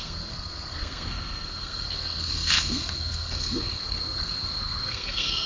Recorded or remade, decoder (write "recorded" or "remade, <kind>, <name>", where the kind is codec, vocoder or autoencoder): remade, codec, SNAC